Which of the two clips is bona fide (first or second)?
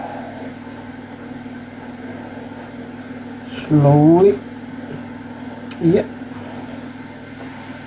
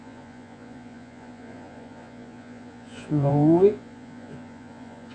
first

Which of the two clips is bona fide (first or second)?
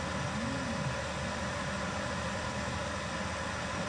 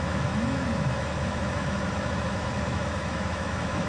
first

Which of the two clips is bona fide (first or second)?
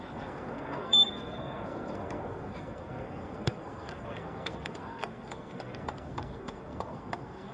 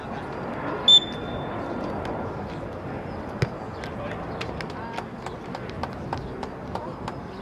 second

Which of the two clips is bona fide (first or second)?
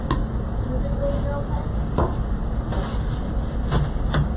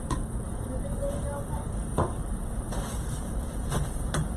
first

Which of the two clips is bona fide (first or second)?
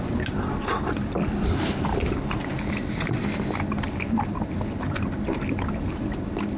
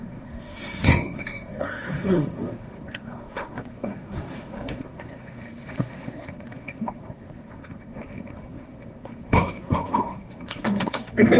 first